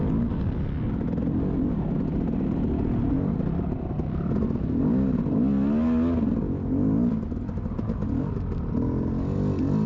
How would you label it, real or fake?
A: real